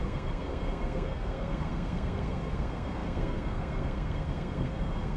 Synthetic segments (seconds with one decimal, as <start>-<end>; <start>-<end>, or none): 0.0-5.2